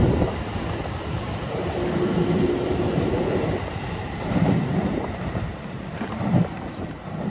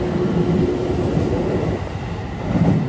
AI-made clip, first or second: first